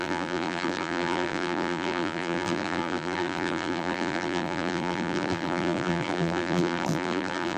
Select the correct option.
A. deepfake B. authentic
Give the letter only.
A